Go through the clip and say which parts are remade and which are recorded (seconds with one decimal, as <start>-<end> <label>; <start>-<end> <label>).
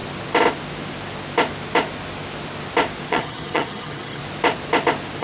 0.0-3.1 recorded; 3.1-4.2 remade; 4.2-5.2 recorded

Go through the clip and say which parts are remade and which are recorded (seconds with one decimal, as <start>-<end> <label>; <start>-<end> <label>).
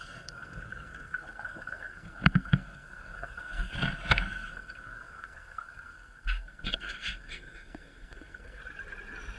0.0-8.6 remade; 8.6-9.4 recorded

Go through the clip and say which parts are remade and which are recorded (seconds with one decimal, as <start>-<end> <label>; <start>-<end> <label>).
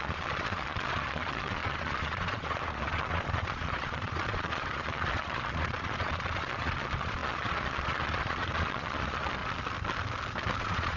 0.0-9.4 remade; 9.4-10.6 recorded; 10.6-11.0 remade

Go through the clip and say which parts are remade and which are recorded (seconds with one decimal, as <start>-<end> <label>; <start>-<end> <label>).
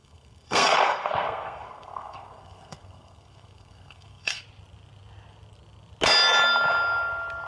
0.0-4.4 remade; 4.4-7.5 recorded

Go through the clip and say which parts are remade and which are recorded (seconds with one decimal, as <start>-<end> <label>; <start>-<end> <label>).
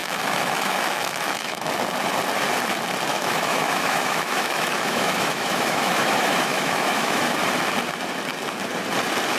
0.0-1.7 remade; 1.7-3.1 recorded; 3.1-7.4 remade; 7.4-9.4 recorded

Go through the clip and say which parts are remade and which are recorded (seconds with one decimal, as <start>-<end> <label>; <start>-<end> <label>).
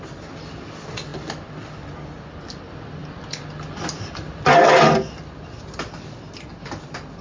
0.0-7.2 recorded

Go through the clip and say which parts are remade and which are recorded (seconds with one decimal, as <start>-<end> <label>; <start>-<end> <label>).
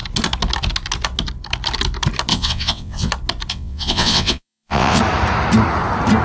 0.0-2.3 recorded; 2.3-3.1 remade; 3.1-3.5 recorded; 3.5-5.0 remade; 5.0-6.2 recorded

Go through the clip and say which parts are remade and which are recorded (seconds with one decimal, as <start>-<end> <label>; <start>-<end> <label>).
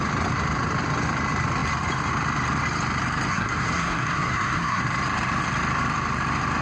0.0-3.3 recorded; 3.3-4.8 remade; 4.8-6.6 recorded